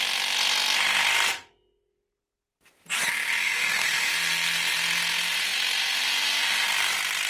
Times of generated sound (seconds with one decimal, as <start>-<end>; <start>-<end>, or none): 3.4-4.1